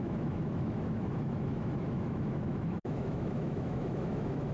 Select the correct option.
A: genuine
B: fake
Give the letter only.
B